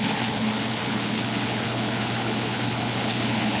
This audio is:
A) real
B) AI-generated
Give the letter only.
B